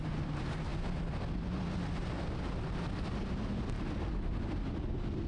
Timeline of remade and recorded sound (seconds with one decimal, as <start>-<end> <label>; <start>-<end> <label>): 0.0-5.3 recorded